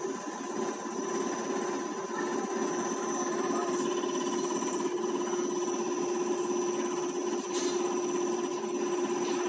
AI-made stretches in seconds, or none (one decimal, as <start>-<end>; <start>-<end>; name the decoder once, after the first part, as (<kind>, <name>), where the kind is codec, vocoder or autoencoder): none